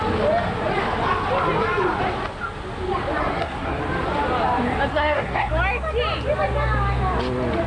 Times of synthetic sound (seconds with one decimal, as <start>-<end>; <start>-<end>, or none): 3.2-3.8; 4.9-5.5